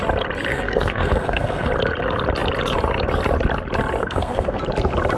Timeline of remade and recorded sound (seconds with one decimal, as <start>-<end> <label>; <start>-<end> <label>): 0.0-0.5 recorded; 0.5-1.7 remade; 1.7-4.0 recorded; 4.0-4.6 remade; 4.6-5.2 recorded